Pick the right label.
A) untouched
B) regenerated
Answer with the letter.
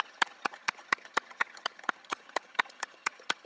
B